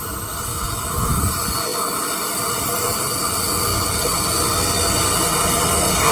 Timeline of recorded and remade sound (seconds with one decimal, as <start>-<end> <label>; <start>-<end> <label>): 0.0-0.5 recorded; 0.5-1.2 remade; 1.2-6.1 recorded